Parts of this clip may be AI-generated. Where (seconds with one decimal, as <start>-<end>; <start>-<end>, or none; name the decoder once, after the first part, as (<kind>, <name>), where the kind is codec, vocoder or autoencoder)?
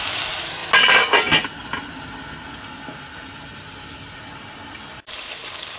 none